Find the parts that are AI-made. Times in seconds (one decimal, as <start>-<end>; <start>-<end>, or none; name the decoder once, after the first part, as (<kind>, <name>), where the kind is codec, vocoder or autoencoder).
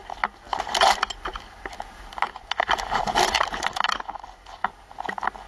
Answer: none